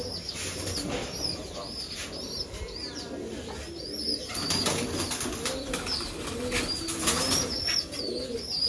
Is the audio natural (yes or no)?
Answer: yes